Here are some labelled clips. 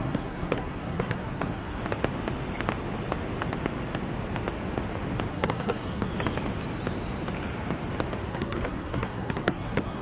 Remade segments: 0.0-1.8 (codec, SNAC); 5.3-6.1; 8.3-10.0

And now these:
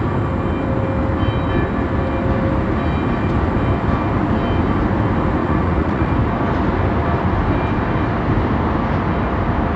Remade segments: 5.4-6.1 (vocoder, Vocos)

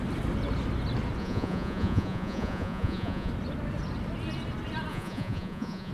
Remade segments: 1.2-3.3 (vocoder, Vocos); 4.9-5.9

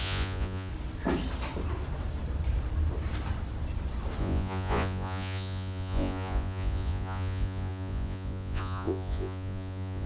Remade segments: 0.0-0.7 (vocoder, Vocos); 4.2-10.1

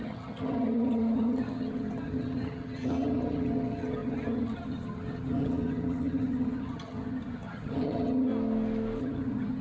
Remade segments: 0.0-8.3 (vocoder, HiFi-GAN); 9.0-9.6

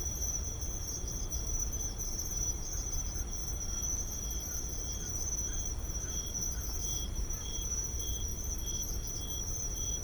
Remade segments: 0.0-3.4 (vocoder, BigVGAN v2); 6.8-8.3; 9.1-10.0

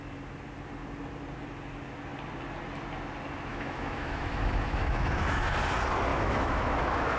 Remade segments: 3.5-5.5 (autoencoder, DAC-VAE); 6.1-7.2